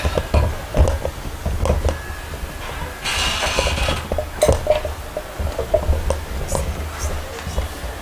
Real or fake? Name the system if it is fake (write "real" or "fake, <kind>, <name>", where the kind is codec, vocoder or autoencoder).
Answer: real